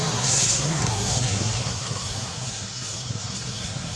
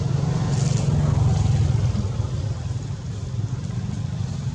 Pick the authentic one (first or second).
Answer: second